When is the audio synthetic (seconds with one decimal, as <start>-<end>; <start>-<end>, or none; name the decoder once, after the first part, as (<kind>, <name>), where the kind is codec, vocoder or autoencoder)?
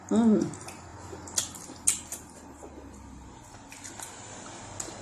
none